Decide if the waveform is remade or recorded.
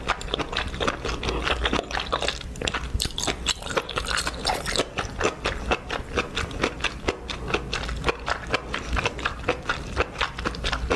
recorded